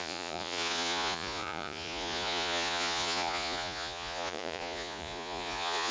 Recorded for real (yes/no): no